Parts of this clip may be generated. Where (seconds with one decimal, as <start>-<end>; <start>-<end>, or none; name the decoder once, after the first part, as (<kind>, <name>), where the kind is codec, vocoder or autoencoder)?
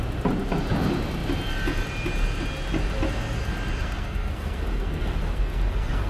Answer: 3.8-6.1 (codec, SNAC)